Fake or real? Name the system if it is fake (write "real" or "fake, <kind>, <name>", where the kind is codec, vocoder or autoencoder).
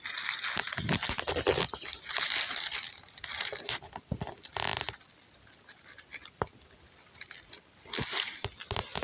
real